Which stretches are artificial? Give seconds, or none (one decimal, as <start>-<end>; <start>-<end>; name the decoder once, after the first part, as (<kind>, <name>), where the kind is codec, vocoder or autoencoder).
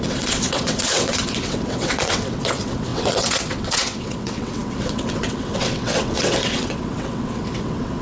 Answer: 0.0-8.0 (vocoder, WaveNeXt)